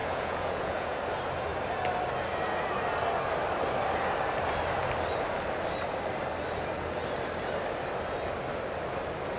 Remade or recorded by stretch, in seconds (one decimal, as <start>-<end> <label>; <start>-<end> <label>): 0.0-1.0 remade; 1.0-9.4 recorded